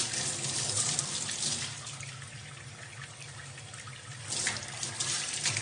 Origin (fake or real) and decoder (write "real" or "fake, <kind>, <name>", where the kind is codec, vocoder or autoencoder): real